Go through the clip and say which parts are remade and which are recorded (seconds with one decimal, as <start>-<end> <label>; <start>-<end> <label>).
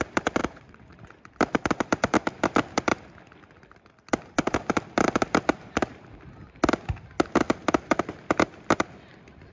0.0-0.4 recorded; 0.4-1.0 remade; 1.0-9.5 recorded